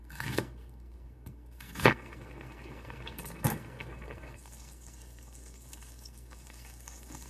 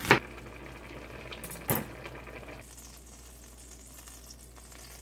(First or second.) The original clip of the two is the second